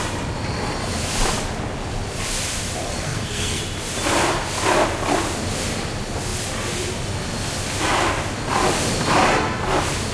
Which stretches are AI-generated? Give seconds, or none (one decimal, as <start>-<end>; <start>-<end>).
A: 2.8-3.6